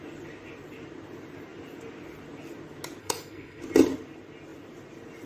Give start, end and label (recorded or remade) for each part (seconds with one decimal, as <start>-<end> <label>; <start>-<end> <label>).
0.0-3.0 recorded; 3.0-3.6 remade; 3.6-5.3 recorded